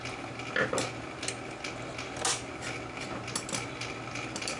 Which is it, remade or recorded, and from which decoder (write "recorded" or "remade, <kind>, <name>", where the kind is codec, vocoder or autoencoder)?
recorded